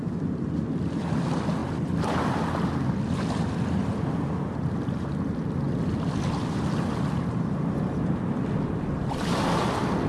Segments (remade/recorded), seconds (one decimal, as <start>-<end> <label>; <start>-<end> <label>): 0.0-10.1 recorded